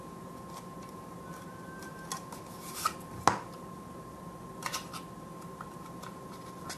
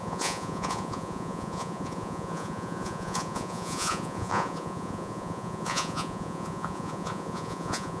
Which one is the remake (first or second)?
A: second